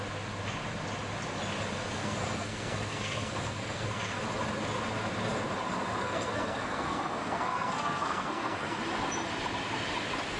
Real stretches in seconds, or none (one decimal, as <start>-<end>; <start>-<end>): 0.0-2.0; 4.2-6.0; 8.8-10.4